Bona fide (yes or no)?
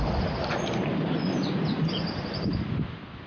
yes